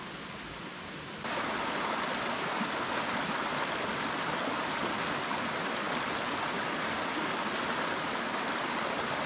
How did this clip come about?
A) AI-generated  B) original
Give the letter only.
B